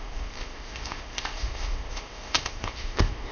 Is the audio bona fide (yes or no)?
no